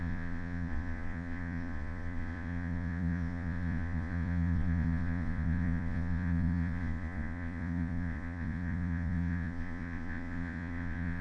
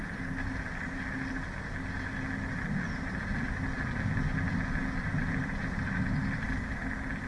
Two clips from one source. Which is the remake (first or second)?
first